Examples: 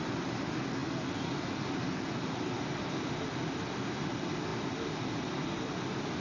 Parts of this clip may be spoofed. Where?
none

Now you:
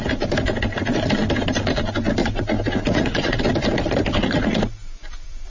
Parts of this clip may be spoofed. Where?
2.2-3.4 (vocoder, Vocos); 4.2-4.7

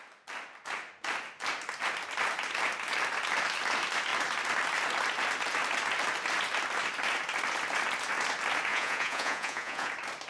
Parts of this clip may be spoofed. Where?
8.7-9.9 (vocoder, Vocos)

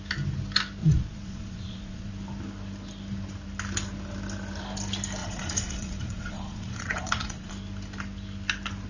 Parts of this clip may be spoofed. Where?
0.8-2.1 (vocoder, Vocos); 5.2-7.5

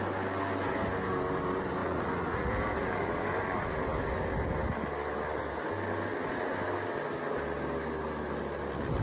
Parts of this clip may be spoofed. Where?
1.8-2.5 (vocoder, Vocos)

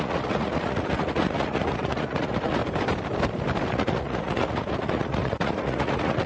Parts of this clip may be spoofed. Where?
0.0-2.6 (vocoder, Vocos); 3.7-6.3